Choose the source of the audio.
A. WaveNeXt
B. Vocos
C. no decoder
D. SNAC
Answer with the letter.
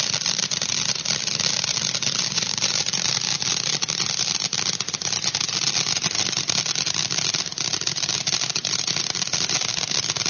C